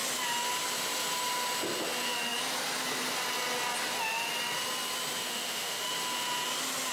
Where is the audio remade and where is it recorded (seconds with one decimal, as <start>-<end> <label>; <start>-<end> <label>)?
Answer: 0.0-5.3 recorded; 5.3-5.9 remade; 5.9-6.9 recorded